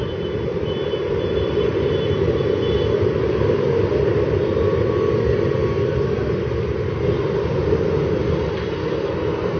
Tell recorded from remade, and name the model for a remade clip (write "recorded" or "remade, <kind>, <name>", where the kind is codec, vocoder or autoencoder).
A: recorded